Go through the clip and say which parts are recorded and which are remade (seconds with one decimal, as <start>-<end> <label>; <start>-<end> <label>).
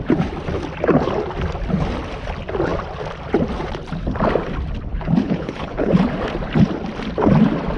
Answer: 0.0-4.9 recorded; 4.9-5.9 remade; 5.9-7.8 recorded